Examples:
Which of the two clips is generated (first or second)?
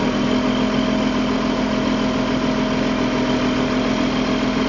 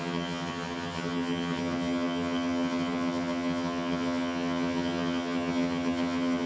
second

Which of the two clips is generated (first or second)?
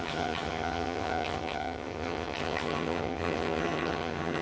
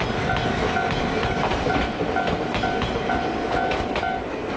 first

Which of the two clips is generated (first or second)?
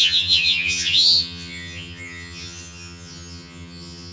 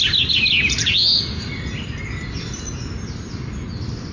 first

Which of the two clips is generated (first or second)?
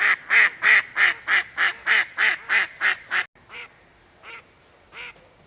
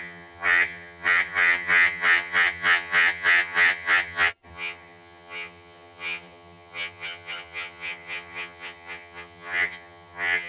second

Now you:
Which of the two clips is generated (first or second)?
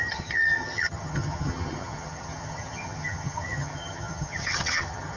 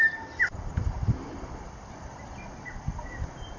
first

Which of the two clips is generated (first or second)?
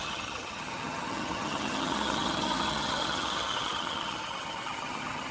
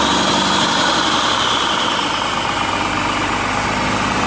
first